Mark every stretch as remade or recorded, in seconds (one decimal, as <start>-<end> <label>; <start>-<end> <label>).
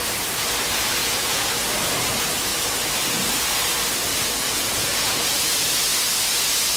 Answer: 0.0-1.0 recorded; 1.0-1.5 remade; 1.5-4.1 recorded; 4.1-5.4 remade; 5.4-6.8 recorded